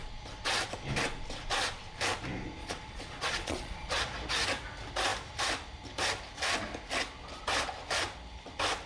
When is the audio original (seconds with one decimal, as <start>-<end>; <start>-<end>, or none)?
0.0-2.6; 4.0-8.9